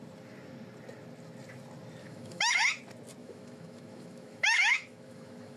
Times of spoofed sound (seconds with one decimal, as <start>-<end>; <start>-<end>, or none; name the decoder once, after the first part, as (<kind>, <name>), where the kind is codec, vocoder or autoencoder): 2.0-2.6 (autoencoder, DAC-VAE); 3.2-5.6